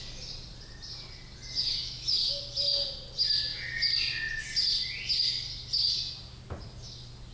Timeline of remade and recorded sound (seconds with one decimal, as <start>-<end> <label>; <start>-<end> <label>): 0.0-1.8 recorded; 1.8-2.4 remade; 2.4-7.3 recorded